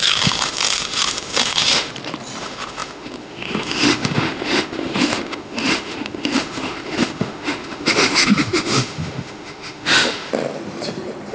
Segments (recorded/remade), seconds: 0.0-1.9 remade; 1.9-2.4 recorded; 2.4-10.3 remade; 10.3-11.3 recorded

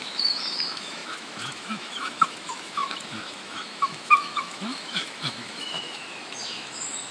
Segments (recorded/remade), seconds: 0.0-7.1 remade

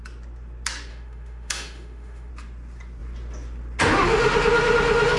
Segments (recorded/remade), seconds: 0.0-0.9 recorded; 0.9-2.3 remade; 2.3-5.2 recorded

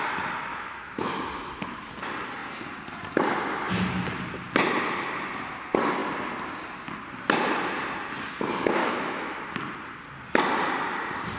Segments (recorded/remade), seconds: 0.0-0.5 recorded; 0.5-1.1 remade; 1.1-8.8 recorded; 8.8-9.4 remade; 9.4-11.4 recorded

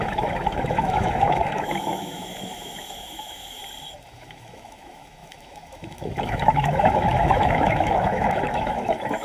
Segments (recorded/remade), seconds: 0.0-3.6 remade; 3.6-4.1 recorded; 4.1-9.2 remade

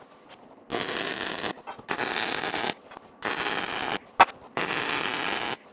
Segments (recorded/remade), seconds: 0.0-5.7 recorded